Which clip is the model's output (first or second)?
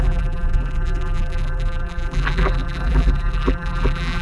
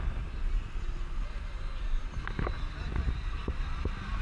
first